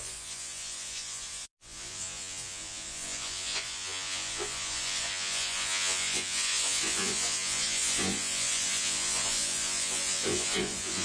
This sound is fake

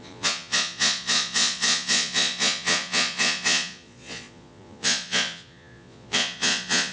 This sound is fake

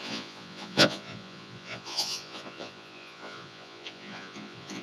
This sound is fake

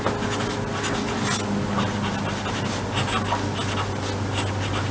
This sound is real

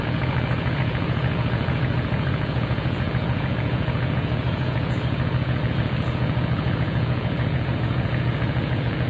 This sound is fake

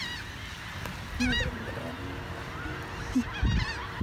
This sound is real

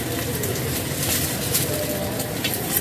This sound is real